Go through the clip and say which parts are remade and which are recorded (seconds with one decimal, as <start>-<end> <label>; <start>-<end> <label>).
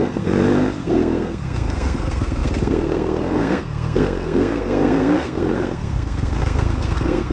0.0-7.3 remade